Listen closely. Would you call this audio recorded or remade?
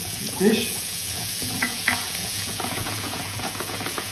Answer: remade